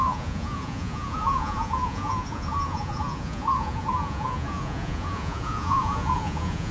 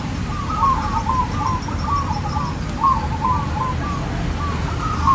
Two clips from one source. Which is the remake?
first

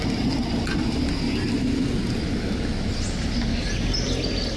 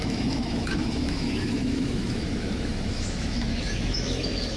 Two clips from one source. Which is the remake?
second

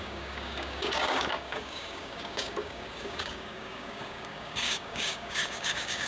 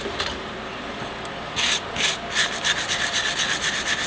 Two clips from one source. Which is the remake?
first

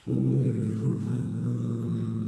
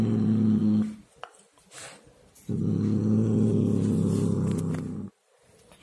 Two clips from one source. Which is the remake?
first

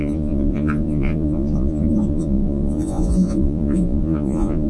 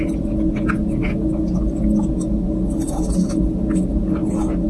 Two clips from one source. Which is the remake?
first